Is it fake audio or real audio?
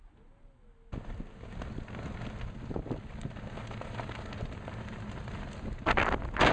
real